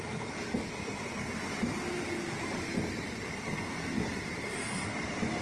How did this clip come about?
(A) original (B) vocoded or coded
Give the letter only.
A